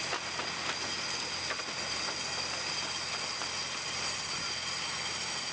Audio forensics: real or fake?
real